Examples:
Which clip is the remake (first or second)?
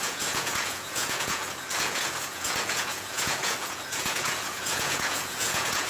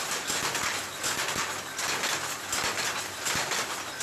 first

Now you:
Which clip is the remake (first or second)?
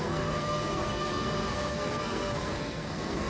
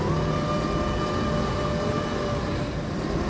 first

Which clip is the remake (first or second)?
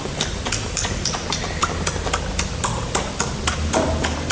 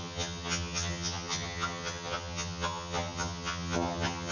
second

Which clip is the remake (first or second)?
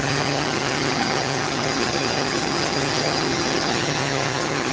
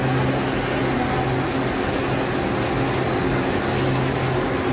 first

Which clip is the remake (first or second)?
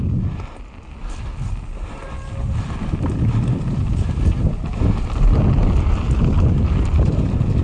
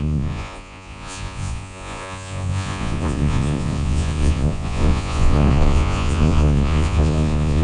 second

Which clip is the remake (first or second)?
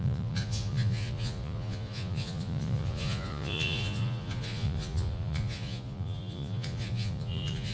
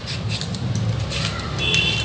first